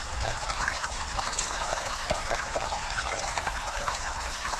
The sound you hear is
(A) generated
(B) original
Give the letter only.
A